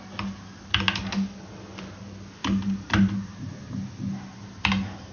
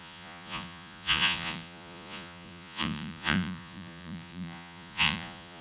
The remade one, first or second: second